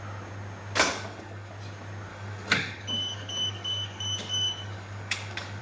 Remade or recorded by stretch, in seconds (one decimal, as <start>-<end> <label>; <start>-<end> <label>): 0.0-0.9 recorded; 0.9-1.5 remade; 1.5-2.1 recorded; 2.1-5.6 remade